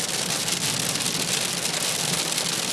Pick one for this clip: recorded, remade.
recorded